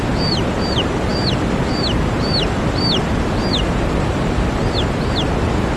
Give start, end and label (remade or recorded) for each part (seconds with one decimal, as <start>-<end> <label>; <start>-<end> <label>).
0.0-5.8 recorded